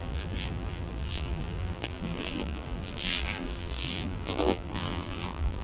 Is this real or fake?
fake